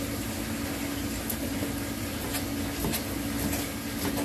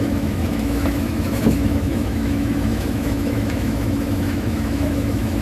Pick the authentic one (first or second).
first